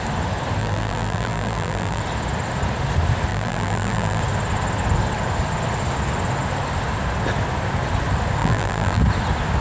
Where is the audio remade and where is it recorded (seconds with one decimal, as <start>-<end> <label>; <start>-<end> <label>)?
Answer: 0.0-0.6 recorded; 0.6-2.0 remade; 2.0-3.3 recorded; 3.3-4.2 remade; 4.2-8.4 recorded; 8.4-9.0 remade; 9.0-9.6 recorded